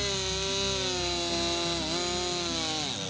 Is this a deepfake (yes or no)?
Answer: no